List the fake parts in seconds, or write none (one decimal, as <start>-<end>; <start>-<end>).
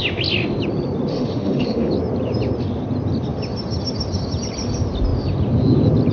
1.1-1.9